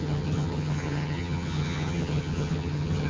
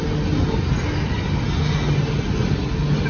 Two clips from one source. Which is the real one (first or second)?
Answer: second